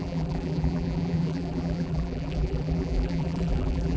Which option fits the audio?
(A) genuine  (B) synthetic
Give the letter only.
B